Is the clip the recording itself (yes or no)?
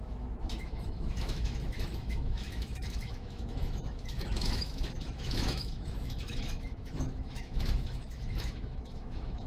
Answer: no